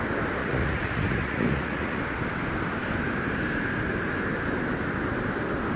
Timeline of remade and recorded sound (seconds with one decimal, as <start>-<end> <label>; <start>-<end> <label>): 0.0-0.4 recorded; 0.4-2.0 remade; 2.0-5.8 recorded